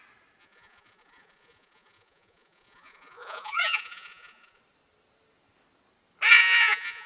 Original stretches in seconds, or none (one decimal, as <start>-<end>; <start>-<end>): 0.0-0.4; 4.6-6.3